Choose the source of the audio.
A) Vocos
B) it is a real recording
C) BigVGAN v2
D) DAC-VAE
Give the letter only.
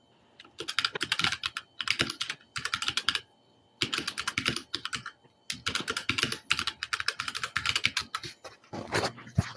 B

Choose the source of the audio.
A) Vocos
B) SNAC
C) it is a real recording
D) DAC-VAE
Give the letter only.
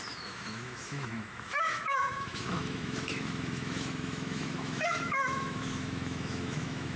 D